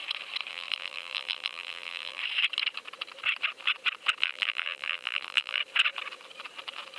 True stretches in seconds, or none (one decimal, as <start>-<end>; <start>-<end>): 0.0-0.5; 2.2-4.2; 5.6-7.0

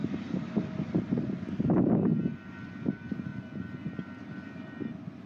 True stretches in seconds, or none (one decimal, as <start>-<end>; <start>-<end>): 0.0-5.3

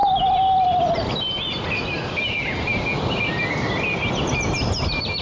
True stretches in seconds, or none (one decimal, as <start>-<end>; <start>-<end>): 0.0-5.2

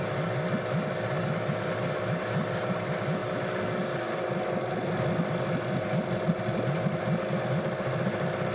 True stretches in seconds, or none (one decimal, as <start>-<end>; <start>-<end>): 0.0-8.5

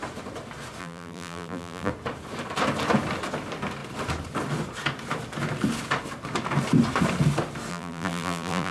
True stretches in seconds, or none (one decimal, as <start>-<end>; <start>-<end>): 0.0-0.8; 1.9-7.7

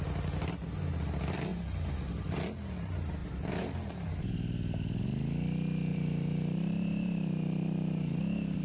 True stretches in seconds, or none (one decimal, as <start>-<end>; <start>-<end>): 0.0-3.2; 4.1-5.9; 8.2-8.6

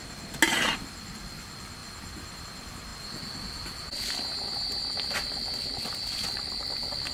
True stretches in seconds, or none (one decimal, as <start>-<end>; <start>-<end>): 0.0-7.1

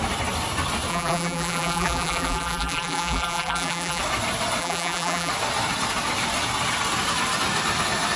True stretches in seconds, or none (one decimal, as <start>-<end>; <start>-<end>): 0.0-0.9; 4.0-4.6; 5.3-8.2